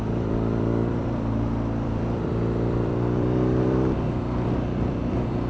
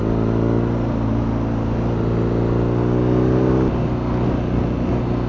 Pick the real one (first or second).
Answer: second